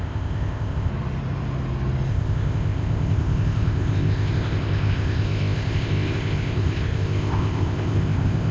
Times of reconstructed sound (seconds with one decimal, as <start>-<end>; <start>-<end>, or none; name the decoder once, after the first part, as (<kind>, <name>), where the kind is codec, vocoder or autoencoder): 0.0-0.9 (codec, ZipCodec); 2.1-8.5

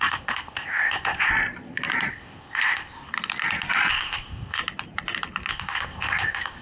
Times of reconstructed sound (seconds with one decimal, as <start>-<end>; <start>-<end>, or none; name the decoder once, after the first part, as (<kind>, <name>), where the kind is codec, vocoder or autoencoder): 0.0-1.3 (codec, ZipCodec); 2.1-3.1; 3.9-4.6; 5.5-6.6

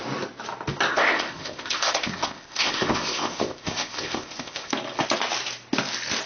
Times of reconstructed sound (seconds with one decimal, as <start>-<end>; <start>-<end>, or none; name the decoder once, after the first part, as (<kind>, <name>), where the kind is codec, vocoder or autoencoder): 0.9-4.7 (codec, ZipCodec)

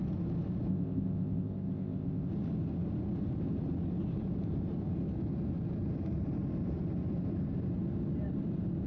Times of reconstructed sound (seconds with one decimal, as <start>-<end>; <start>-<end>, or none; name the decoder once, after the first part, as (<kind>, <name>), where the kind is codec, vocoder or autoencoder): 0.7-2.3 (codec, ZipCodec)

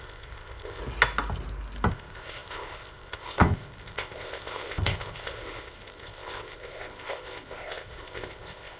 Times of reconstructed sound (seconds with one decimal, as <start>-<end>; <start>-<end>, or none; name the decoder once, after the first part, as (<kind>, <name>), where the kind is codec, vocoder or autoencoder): 0.0-0.8 (codec, ZipCodec); 1.9-8.8

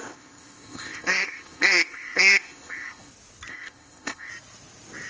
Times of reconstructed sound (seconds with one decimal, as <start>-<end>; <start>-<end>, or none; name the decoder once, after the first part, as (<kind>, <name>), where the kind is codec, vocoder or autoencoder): 0.0-3.1 (codec, ZipCodec); 3.5-4.3

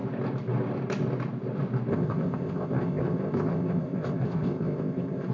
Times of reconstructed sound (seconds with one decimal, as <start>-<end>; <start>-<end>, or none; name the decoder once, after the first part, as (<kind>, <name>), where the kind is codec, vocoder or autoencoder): 1.9-5.3 (codec, ZipCodec)